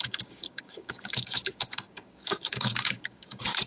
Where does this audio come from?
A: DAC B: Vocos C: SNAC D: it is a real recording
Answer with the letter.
A